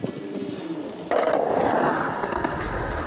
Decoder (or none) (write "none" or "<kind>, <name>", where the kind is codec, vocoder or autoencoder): none